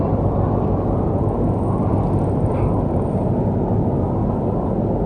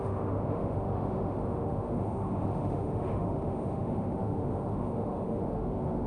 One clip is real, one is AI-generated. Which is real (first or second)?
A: first